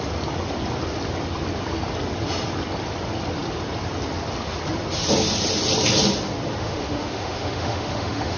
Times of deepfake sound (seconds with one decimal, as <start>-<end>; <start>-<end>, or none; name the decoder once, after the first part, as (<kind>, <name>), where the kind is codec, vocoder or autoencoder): 6.6-8.4 (autoencoder, DAC-VAE)